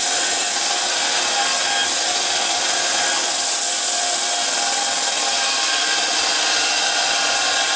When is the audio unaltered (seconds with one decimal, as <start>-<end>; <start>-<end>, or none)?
0.0-7.8